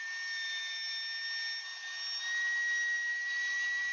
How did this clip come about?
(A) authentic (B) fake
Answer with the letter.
A